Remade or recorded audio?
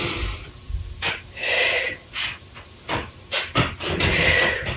remade